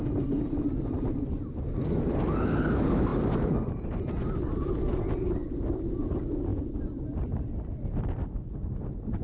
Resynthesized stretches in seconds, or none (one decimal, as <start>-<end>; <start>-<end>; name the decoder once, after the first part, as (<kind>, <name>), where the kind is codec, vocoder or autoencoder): 3.1-4.1 (vocoder, BigVGAN v2)